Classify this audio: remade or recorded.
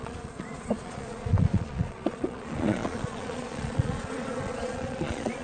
remade